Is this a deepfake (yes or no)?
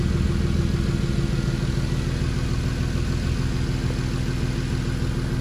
no